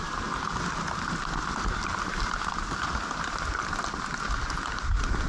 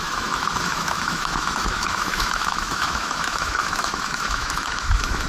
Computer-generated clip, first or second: second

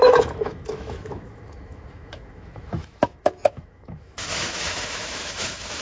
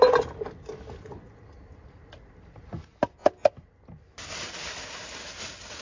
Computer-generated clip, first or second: first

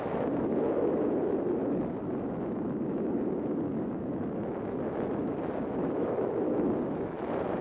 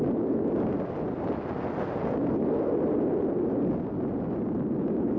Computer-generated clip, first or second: first